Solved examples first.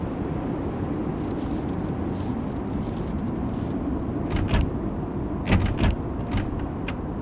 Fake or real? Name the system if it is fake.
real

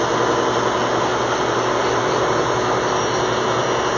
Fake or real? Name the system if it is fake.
real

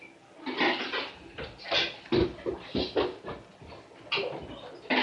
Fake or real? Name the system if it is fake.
real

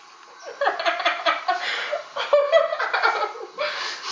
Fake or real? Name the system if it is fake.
real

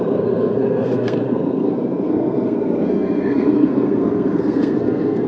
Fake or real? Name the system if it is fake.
fake, codec, SNAC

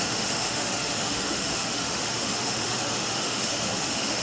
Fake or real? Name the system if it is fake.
fake, autoencoder, DAC-VAE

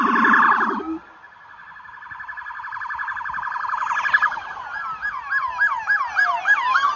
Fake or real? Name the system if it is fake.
real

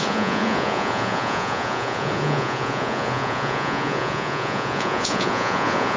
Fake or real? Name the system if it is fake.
fake, vocoder, Vocos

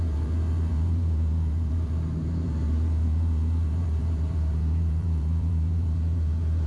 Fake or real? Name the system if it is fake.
fake, vocoder, BigVGAN v2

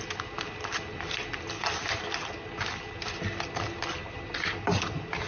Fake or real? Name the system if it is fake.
real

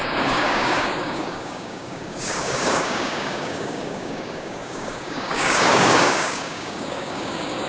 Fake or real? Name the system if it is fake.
fake, codec, DAC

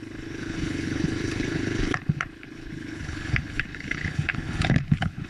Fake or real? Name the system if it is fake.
fake, codec, HILCodec